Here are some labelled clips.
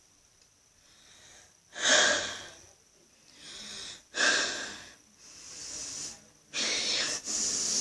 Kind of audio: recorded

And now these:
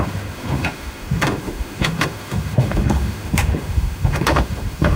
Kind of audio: remade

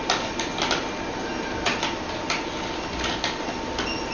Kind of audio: recorded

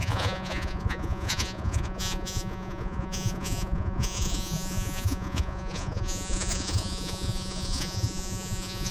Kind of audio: remade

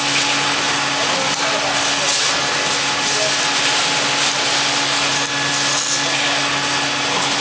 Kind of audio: recorded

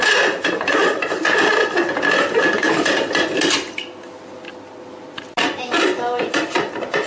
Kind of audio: recorded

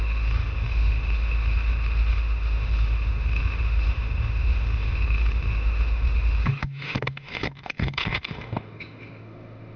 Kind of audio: remade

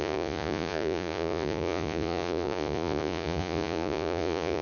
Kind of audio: remade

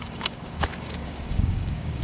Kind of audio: remade